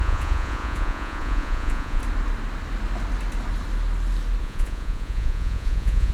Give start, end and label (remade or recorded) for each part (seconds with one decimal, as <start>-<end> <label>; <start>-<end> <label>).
0.0-2.0 remade; 2.0-4.4 recorded; 4.4-6.1 remade